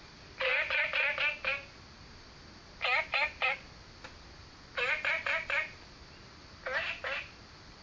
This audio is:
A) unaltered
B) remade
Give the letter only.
A